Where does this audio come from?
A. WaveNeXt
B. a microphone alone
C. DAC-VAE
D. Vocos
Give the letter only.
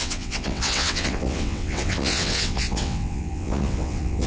A